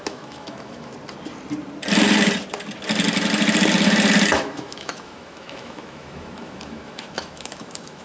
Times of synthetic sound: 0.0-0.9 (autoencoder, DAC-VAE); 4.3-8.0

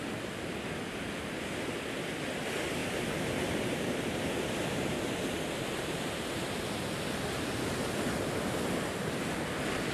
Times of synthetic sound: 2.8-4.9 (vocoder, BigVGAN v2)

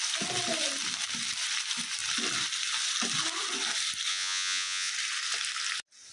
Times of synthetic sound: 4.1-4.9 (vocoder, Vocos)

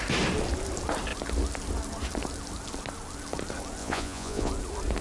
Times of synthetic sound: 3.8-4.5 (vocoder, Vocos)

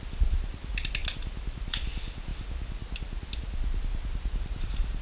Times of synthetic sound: none

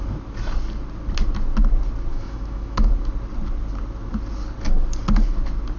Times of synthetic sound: 2.1-2.9 (autoencoder, DAC-VAE)

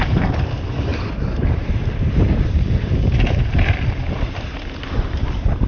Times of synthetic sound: none

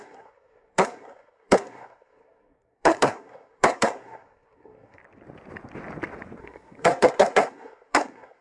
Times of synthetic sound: 0.0-5.0 (codec, SNAC); 6.4-8.4